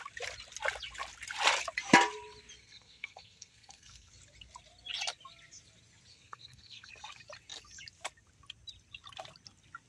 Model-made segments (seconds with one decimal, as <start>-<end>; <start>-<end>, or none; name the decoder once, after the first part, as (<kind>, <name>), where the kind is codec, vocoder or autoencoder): 2.6-4.1 (codec, SNAC); 6.1-6.9